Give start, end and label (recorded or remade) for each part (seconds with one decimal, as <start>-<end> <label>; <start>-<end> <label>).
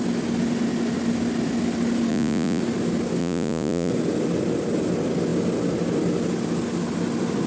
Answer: 0.0-2.1 recorded; 2.1-2.6 remade; 2.6-3.2 recorded; 3.2-3.9 remade; 3.9-7.5 recorded